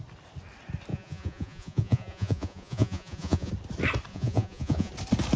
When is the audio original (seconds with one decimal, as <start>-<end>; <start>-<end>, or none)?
0.0-0.9; 3.5-4.1; 4.9-5.4

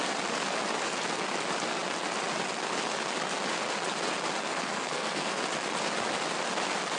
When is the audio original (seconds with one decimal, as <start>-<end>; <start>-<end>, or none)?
0.0-4.5; 5.4-7.0

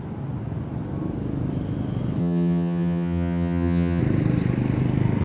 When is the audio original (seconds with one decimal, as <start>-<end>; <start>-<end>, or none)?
0.0-2.2; 4.0-5.2

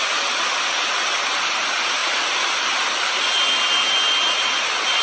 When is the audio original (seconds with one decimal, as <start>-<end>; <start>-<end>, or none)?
0.0-5.0

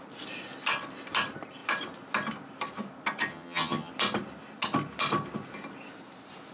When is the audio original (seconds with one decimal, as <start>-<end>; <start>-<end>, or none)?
0.0-3.3; 3.9-6.5

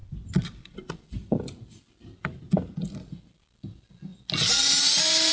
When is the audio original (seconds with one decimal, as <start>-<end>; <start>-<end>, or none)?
0.0-5.3

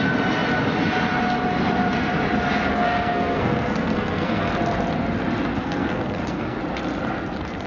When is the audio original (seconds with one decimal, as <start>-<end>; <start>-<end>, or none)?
0.0-2.7; 4.5-5.5; 6.6-7.7

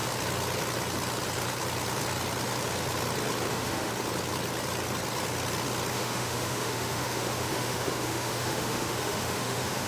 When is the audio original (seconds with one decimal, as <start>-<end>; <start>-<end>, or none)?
0.0-3.5; 3.9-5.9